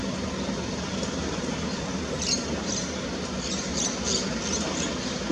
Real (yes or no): yes